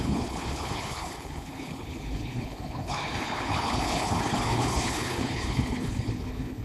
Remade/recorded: remade